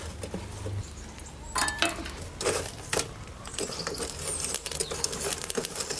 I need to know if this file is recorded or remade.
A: recorded